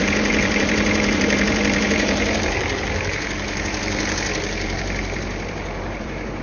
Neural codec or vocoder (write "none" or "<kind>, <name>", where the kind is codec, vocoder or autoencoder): vocoder, BigVGAN v2